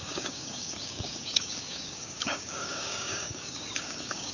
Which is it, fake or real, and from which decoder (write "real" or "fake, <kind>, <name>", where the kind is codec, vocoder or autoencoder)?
fake, codec, DAC